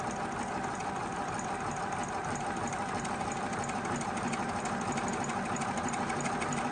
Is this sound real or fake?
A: real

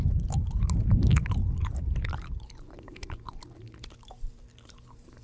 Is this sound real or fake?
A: fake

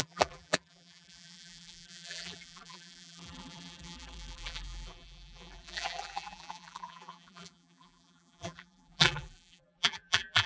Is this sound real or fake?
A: fake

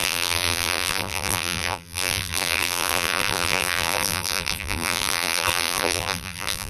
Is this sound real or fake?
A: fake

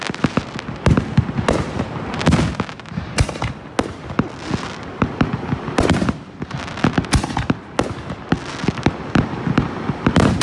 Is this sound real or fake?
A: real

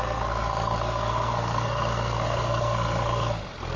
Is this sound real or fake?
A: fake